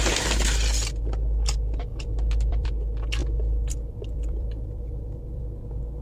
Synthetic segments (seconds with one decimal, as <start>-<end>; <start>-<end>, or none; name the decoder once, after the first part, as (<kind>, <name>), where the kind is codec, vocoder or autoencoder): 1.9-2.7 (vocoder, BigVGAN v2); 3.2-5.4